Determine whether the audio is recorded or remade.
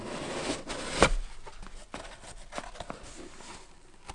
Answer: recorded